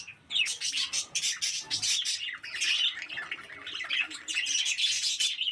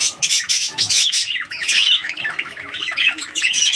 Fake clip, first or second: second